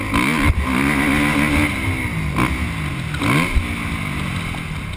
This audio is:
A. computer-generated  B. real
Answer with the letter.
B